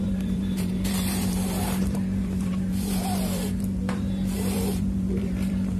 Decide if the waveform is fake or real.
fake